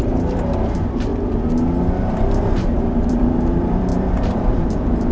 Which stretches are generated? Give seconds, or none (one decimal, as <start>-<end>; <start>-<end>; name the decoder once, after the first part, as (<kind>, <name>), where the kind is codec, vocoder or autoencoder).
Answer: 0.0-1.1 (vocoder, BigVGAN v2); 2.4-5.1